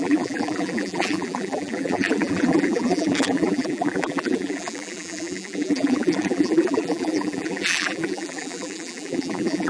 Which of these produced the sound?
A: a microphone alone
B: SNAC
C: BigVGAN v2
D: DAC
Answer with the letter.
C